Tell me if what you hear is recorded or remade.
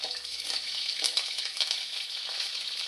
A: remade